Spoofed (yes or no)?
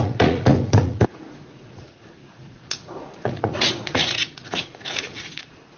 yes